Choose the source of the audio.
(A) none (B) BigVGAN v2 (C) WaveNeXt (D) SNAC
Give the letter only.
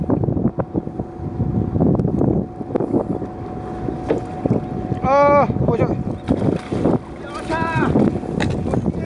A